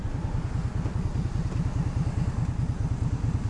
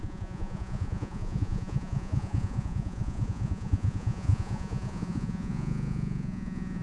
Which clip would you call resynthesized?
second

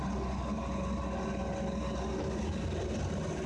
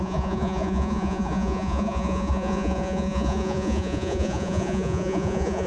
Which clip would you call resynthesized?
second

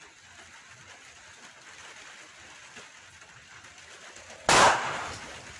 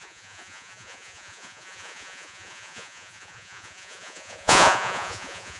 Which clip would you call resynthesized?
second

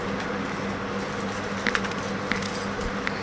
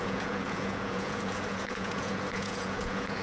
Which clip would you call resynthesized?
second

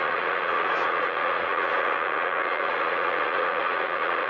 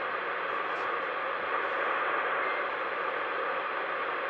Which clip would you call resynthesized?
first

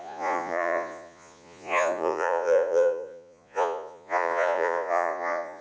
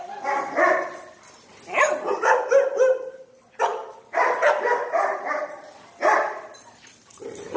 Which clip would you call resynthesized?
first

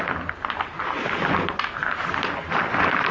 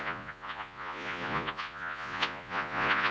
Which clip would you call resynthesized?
second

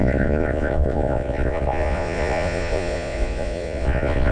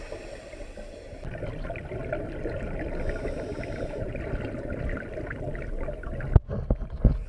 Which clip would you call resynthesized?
first